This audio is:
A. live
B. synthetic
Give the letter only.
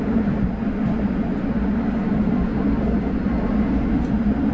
A